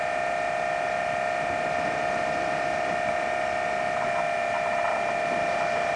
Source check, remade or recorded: recorded